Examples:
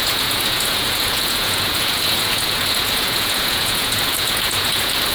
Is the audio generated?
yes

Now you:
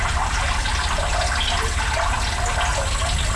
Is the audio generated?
no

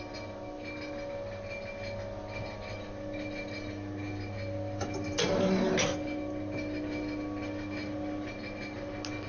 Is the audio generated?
no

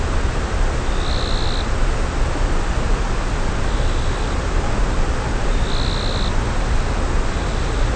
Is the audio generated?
no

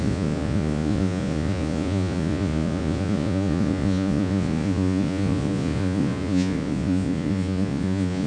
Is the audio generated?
yes